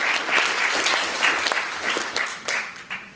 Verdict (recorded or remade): recorded